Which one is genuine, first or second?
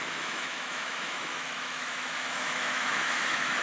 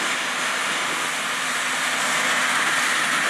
second